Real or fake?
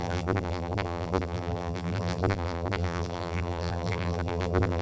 fake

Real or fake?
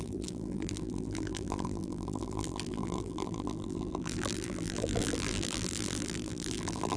fake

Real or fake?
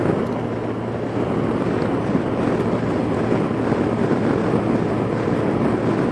real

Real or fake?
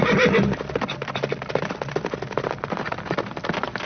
fake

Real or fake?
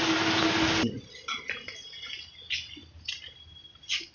real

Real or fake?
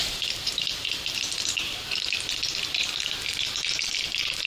fake